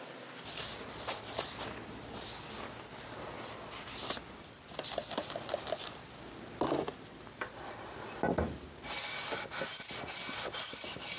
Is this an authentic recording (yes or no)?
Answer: yes